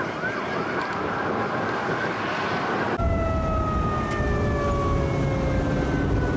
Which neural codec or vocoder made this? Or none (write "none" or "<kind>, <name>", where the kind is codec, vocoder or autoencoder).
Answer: none